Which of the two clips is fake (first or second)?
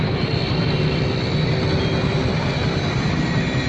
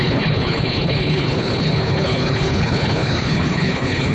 second